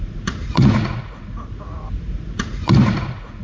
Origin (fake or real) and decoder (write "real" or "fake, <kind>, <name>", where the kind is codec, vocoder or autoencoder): fake, vocoder, Vocos